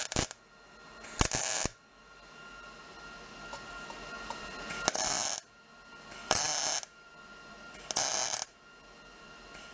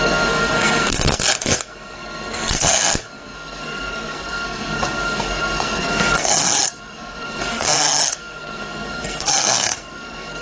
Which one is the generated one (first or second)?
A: second